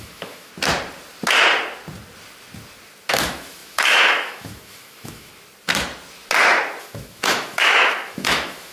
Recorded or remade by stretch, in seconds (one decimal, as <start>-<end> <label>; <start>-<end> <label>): 0.0-0.5 remade; 0.5-3.1 recorded; 3.1-5.3 remade; 5.3-6.8 recorded; 6.8-8.7 remade